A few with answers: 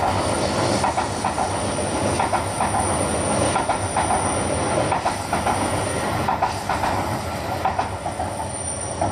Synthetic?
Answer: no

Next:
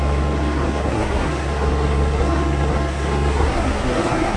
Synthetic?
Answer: yes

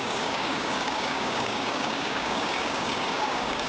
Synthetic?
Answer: yes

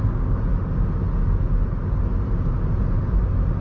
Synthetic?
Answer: no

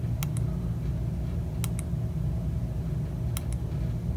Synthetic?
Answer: no